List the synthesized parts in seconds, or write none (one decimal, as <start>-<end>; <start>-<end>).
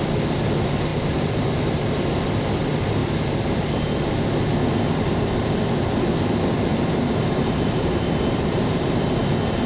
0.9-1.6; 6.7-9.1